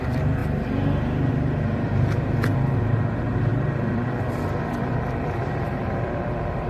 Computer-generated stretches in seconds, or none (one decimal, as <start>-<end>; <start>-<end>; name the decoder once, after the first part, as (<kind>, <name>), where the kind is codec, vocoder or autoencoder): 3.5-6.7 (vocoder, BigVGAN v2)